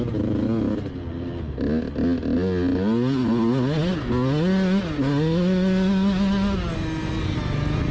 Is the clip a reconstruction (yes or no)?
no